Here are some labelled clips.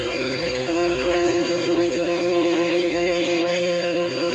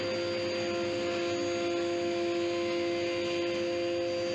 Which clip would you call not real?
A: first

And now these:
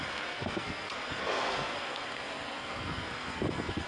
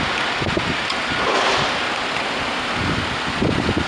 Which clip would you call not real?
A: first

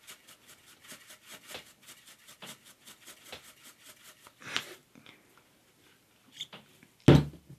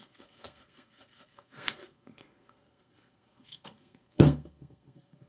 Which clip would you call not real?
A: second